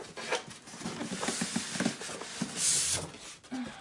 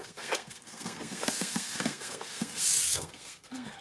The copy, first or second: second